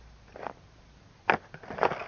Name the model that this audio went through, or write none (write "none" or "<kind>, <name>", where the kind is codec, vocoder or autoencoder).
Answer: none